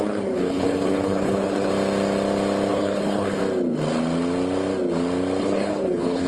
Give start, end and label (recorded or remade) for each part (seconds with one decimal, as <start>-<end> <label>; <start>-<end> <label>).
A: 0.0-1.7 remade; 1.7-2.7 recorded; 2.7-3.4 remade; 3.4-5.4 recorded; 5.4-6.3 remade